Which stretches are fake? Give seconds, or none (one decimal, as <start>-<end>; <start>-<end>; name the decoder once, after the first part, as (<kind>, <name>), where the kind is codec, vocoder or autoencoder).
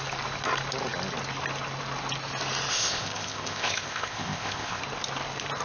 2.7-4.8 (codec, ZipCodec)